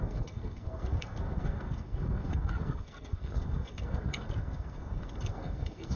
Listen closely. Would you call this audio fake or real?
fake